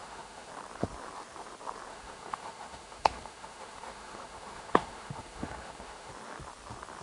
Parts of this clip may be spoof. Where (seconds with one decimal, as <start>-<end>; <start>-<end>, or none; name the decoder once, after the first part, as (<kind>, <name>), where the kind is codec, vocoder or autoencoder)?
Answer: 0.0-0.5 (autoencoder, DAC-VAE); 1.9-6.1